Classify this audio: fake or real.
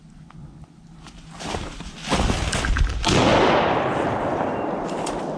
real